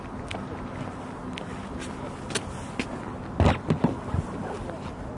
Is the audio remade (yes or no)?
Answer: no